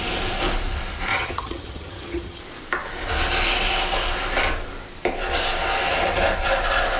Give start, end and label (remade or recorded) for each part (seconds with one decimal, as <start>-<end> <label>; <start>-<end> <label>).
0.0-1.1 recorded; 1.1-2.4 remade; 2.4-7.0 recorded